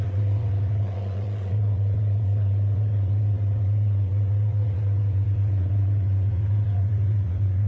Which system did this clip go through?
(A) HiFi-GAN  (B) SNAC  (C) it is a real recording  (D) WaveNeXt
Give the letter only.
D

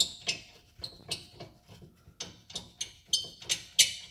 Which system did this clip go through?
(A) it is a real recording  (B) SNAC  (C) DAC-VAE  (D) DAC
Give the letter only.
A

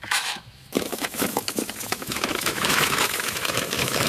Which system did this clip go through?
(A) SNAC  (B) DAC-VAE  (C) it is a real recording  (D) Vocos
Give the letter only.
B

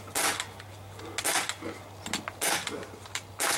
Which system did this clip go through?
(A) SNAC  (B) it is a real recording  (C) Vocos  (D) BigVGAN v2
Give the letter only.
B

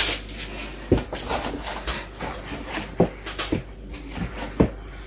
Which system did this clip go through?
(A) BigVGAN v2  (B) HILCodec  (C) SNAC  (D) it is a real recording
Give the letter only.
D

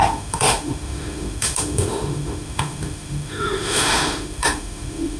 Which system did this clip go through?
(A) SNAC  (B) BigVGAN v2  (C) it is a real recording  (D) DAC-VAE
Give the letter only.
D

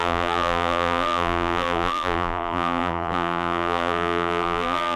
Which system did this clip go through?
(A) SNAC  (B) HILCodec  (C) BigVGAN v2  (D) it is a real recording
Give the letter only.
C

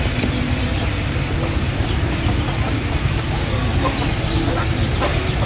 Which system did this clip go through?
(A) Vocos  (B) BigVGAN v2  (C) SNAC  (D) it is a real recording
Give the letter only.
D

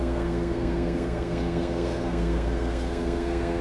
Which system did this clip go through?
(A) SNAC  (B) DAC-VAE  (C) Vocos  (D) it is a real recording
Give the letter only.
A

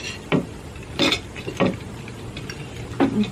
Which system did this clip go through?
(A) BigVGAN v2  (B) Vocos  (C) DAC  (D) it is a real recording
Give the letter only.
A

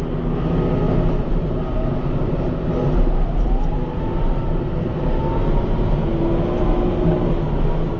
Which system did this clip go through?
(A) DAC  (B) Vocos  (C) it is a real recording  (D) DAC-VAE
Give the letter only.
C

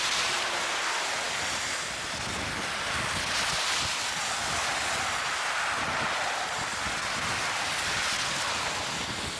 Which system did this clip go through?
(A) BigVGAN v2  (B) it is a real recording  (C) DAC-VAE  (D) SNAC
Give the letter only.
B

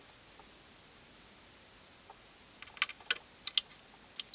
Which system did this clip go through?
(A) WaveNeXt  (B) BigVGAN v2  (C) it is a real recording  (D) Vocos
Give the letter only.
C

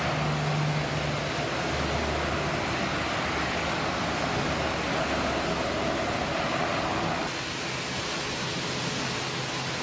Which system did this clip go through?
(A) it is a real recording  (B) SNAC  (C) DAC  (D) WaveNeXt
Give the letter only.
A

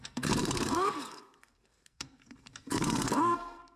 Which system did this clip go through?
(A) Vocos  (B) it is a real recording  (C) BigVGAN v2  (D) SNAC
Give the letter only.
D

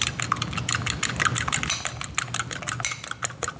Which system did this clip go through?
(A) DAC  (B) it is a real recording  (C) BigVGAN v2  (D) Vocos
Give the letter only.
B